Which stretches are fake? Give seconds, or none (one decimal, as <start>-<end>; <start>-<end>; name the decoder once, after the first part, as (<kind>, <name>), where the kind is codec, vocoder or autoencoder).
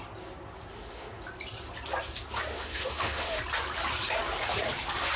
0.7-1.2 (autoencoder, DAC-VAE); 2.5-3.4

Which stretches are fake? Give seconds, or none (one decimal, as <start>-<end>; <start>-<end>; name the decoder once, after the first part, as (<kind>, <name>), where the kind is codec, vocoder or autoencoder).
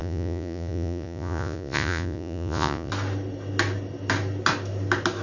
0.0-2.9 (vocoder, Vocos)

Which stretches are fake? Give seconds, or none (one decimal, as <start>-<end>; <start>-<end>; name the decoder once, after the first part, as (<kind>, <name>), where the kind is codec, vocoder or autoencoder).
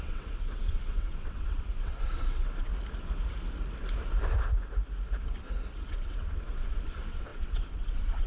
0.0-2.7 (vocoder, WaveNeXt); 5.8-8.3